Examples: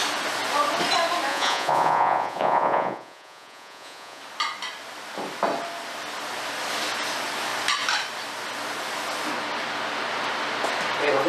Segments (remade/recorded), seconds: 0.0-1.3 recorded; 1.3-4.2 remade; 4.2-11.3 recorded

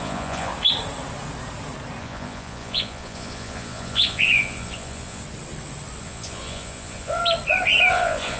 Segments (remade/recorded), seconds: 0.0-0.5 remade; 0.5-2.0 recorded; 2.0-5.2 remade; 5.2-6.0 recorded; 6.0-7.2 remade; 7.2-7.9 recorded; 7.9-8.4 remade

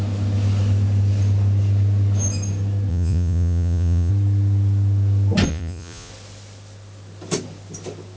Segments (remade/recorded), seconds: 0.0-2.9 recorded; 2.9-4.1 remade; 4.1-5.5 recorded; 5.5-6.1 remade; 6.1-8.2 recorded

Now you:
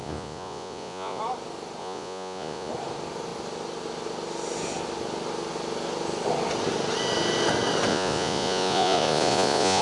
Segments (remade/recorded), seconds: 0.0-1.2 remade; 1.2-1.8 recorded; 1.8-2.7 remade; 2.7-7.9 recorded; 7.9-9.8 remade